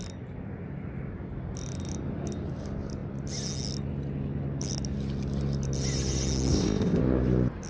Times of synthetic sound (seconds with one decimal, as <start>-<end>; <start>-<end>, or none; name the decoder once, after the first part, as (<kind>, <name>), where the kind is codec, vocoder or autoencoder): 6.5-7.0 (codec, ZipCodec)